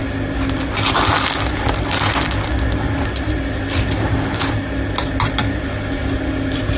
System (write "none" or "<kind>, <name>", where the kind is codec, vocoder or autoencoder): none